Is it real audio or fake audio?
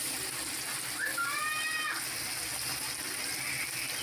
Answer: real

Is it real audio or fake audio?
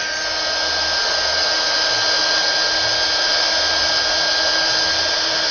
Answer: real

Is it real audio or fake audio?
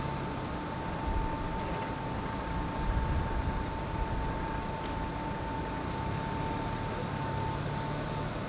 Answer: real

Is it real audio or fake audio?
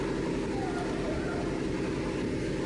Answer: real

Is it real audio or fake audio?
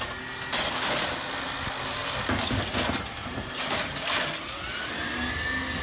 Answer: real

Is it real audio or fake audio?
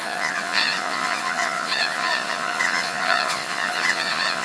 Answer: fake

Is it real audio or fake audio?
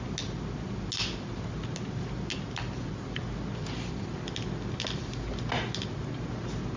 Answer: real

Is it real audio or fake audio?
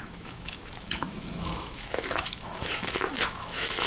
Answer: fake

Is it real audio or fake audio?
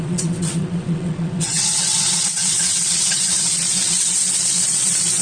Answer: fake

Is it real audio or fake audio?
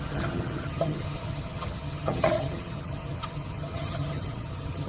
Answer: fake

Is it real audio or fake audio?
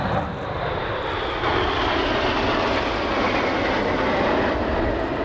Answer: real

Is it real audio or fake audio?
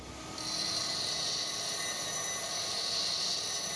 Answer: real